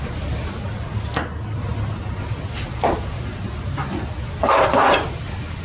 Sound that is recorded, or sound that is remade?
recorded